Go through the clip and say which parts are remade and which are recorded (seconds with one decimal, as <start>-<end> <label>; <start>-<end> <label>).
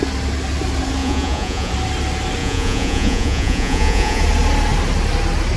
0.0-1.0 recorded; 1.0-1.7 remade; 1.7-2.4 recorded; 2.4-4.2 remade; 4.2-5.6 recorded